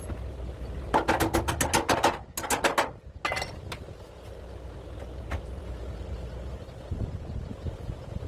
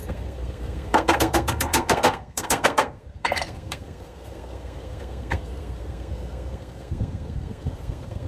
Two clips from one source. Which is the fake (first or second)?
second